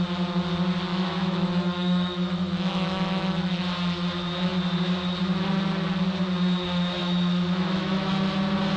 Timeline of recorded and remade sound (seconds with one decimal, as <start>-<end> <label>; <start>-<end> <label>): 0.0-0.9 recorded; 0.9-3.6 remade; 3.6-7.0 recorded; 7.0-8.1 remade; 8.1-8.8 recorded